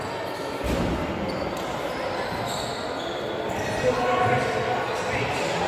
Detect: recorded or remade recorded